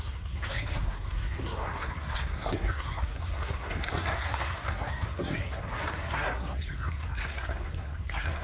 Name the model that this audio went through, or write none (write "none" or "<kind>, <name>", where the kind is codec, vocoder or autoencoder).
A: codec, SNAC